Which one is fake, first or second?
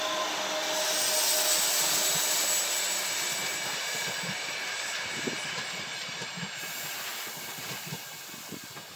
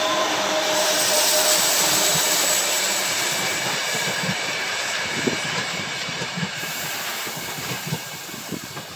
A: second